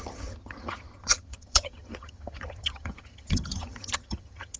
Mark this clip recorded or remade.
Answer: remade